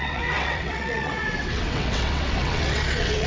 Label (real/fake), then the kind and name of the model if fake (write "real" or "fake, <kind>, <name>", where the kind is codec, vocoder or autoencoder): fake, vocoder, WaveNeXt